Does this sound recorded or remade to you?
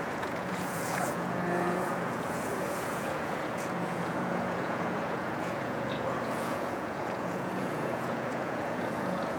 remade